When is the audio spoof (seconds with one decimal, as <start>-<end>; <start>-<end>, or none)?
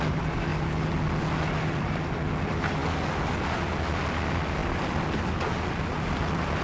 none